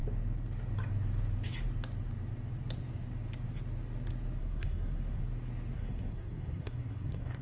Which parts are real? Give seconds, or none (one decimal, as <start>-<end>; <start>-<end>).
0.0-4.4; 5.2-5.7